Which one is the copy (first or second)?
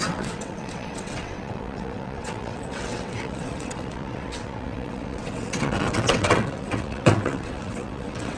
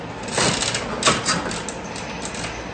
first